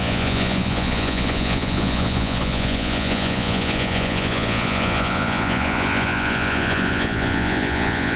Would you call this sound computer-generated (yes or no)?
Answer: yes